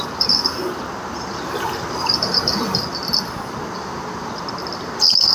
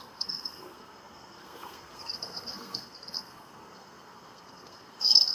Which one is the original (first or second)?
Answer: first